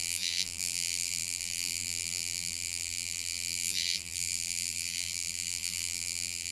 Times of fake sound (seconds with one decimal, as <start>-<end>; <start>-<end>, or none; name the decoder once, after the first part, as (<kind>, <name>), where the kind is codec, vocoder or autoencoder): 0.0-6.5 (vocoder, BigVGAN v2)